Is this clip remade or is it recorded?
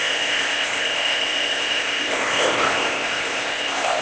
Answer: remade